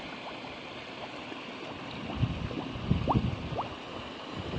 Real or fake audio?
real